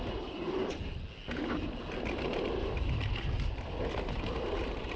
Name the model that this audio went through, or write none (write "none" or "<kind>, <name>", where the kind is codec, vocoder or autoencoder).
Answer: none